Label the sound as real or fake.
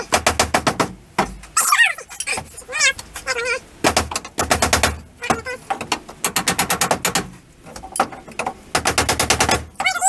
real